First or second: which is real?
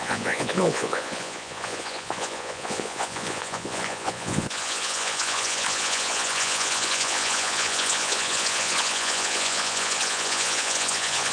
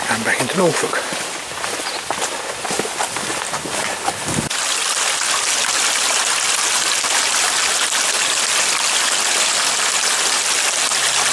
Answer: second